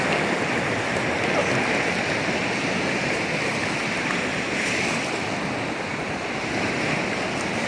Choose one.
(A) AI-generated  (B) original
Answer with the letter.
B